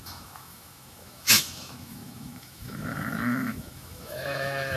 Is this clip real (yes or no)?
no